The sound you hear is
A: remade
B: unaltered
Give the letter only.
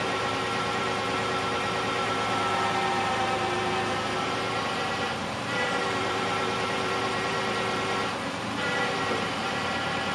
A